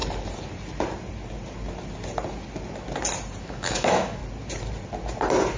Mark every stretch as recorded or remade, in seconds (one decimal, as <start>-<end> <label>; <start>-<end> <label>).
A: 0.0-3.4 recorded; 3.4-4.2 remade; 4.2-5.6 recorded